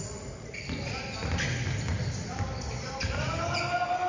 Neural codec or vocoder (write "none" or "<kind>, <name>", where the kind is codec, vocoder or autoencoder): none